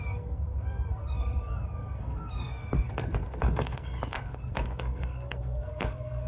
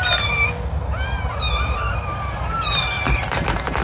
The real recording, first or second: second